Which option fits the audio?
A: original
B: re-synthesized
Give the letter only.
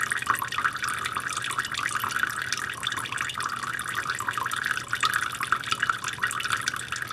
A